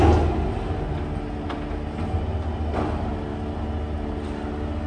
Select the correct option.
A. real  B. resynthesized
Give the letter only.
A